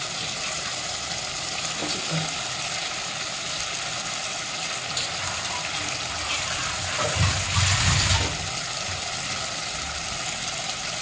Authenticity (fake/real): real